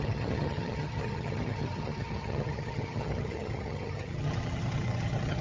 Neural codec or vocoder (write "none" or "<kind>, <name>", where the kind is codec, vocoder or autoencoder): vocoder, HiFi-GAN